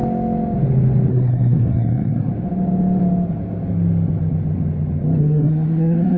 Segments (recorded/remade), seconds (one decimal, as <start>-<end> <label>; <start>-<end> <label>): 0.0-1.1 recorded; 1.1-2.3 remade; 2.3-5.2 recorded; 5.2-6.2 remade